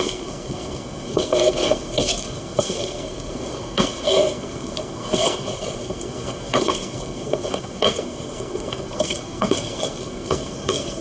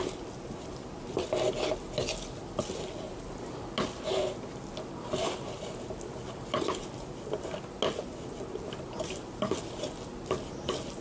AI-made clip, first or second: first